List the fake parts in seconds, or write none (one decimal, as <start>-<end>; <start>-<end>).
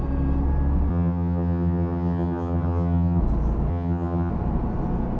0.9-3.2; 3.7-4.3